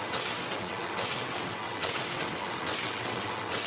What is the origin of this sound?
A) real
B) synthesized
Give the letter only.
B